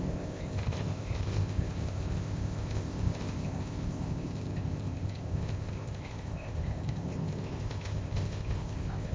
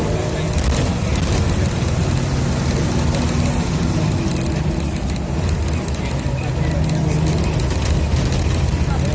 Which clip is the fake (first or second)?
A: first